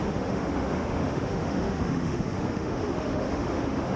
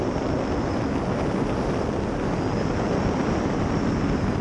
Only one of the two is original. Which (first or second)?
second